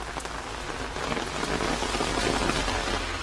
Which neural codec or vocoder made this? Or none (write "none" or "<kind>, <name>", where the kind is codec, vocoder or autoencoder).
none